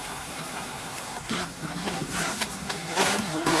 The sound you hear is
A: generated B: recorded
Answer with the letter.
A